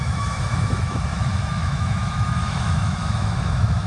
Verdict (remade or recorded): remade